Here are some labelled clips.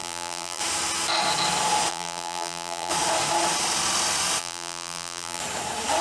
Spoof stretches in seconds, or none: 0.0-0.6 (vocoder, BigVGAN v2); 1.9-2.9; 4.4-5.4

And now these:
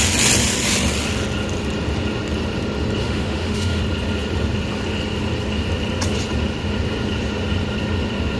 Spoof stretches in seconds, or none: 3.0-3.8 (autoencoder, DAC-VAE)

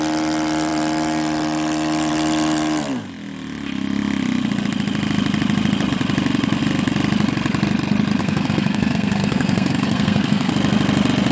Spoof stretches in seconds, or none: 8.2-10.5 (codec, SNAC)